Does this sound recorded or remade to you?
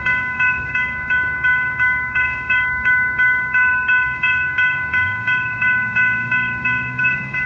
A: remade